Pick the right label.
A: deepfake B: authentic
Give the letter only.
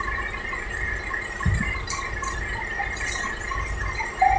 B